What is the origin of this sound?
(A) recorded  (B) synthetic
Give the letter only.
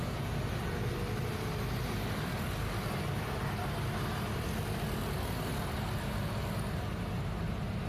A